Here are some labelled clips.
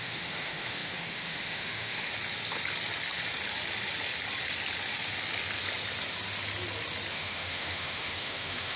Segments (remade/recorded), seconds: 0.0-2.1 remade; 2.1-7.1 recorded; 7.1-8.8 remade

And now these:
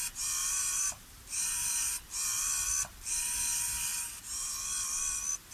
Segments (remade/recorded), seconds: 0.0-0.4 recorded; 0.4-1.9 remade; 1.9-3.9 recorded; 3.9-4.5 remade; 4.5-5.5 recorded

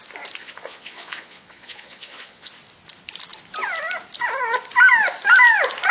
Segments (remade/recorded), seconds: 0.0-0.4 recorded; 0.4-2.5 remade; 2.5-5.9 recorded

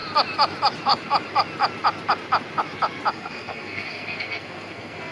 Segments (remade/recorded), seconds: 0.0-3.1 recorded; 3.1-5.1 remade

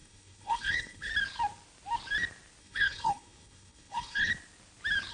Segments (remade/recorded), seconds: 0.0-1.1 remade; 1.1-2.6 recorded; 2.6-4.3 remade; 4.3-5.1 recorded

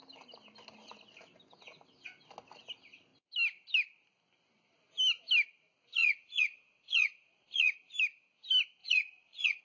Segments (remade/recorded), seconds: 0.0-6.0 recorded; 6.0-7.9 remade; 7.9-8.8 recorded; 8.8-9.6 remade